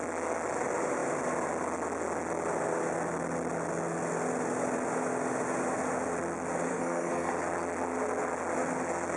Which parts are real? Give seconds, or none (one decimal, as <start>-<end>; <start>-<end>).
0.0-6.7; 7.3-9.2